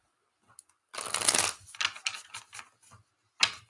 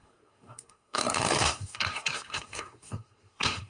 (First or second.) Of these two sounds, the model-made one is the second